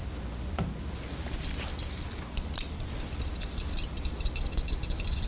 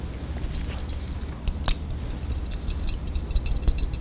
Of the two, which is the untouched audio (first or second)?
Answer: second